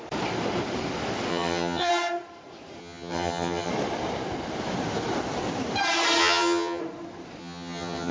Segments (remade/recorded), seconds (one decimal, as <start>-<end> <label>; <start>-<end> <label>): 0.0-1.3 recorded; 1.3-1.9 remade; 1.9-2.8 recorded; 2.8-3.7 remade; 3.7-6.2 recorded; 6.2-6.8 remade; 6.8-7.4 recorded; 7.4-8.1 remade